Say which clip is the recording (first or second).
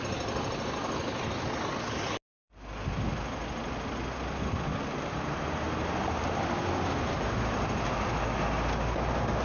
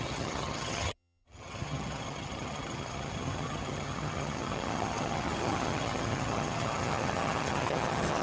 first